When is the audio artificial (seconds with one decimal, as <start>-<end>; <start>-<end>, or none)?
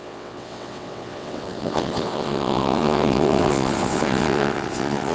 0.0-5.1